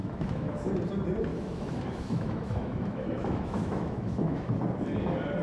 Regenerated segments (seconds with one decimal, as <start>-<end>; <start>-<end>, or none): 0.0-0.7; 1.3-4.5